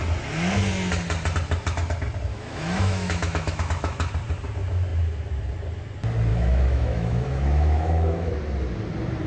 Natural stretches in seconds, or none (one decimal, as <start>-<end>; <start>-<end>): 0.0-2.3; 4.1-6.3; 8.3-9.3